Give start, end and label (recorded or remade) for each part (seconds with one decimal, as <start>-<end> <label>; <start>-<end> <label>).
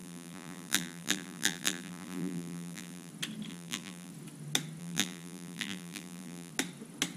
0.0-3.1 remade; 3.1-3.5 recorded; 3.5-4.1 remade; 4.1-4.8 recorded; 4.8-6.5 remade; 6.5-7.2 recorded